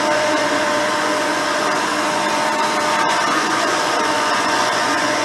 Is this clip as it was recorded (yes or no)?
no